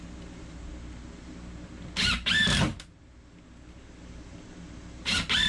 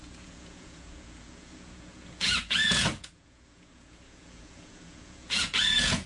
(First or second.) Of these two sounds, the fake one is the second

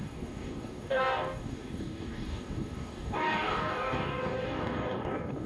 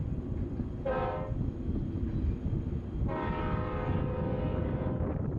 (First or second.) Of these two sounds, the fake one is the first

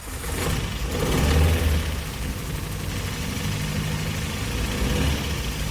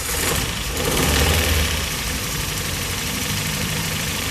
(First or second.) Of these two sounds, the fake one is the second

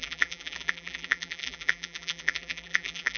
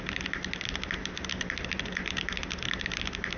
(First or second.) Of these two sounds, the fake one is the first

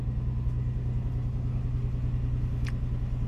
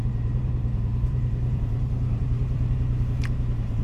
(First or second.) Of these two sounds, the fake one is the second